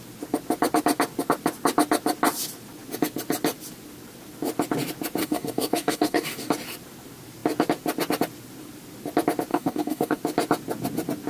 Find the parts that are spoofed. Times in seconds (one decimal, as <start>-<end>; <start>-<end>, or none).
5.2-6.5; 9.5-10.2